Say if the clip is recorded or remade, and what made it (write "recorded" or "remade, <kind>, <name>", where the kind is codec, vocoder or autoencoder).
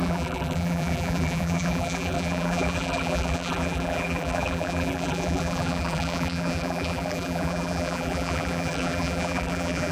remade, vocoder, BigVGAN v2